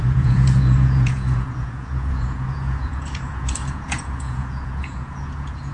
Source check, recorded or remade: remade